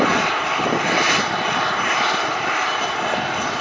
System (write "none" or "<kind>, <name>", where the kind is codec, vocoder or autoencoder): none